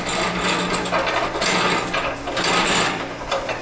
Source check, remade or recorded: remade